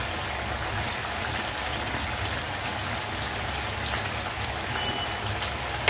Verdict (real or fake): real